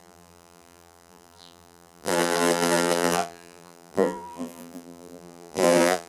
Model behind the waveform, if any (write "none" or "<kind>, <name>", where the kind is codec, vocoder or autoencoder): vocoder, BigVGAN v2